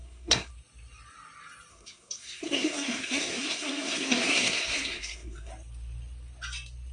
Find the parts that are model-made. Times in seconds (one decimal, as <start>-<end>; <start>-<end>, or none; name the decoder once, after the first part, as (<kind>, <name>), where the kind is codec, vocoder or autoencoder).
0.0-0.5 (codec, SNAC); 1.7-5.5